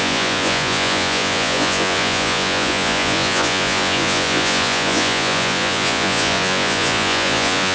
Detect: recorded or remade remade